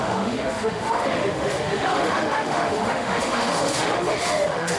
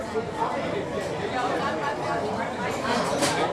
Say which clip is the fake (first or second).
first